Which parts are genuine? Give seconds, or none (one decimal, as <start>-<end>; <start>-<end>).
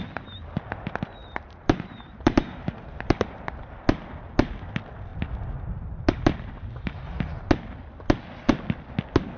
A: 0.0-1.2; 3.6-9.4